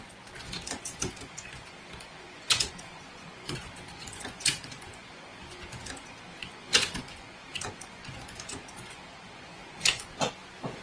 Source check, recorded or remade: remade